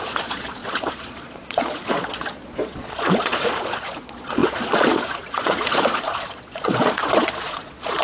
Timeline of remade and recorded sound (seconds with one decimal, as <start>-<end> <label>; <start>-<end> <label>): 0.0-8.0 remade